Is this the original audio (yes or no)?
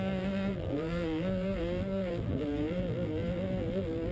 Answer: no